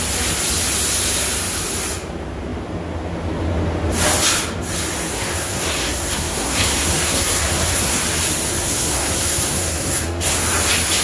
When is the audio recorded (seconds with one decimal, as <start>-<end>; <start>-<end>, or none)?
0.0-5.1; 8.0-8.5; 10.4-11.0